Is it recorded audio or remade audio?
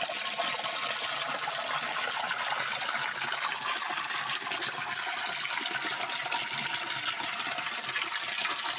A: recorded